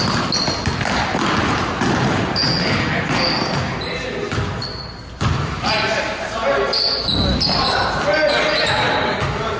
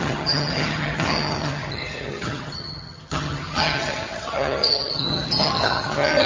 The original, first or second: first